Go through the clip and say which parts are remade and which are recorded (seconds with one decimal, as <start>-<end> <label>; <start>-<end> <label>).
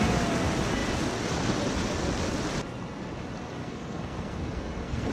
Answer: 0.0-3.6 recorded; 3.6-5.1 remade